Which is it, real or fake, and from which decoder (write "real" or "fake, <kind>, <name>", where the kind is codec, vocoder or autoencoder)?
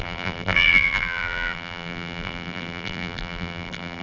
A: fake, vocoder, BigVGAN v2